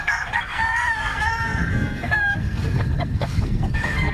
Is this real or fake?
fake